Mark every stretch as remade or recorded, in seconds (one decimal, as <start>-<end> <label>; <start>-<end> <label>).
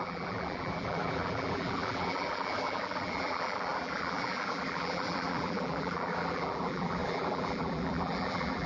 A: 0.0-8.7 remade